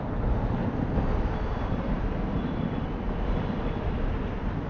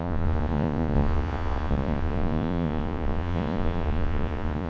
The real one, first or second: first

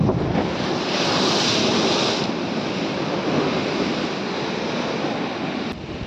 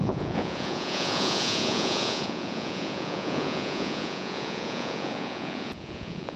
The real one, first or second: first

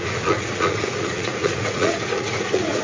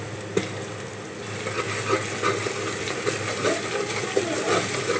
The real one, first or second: second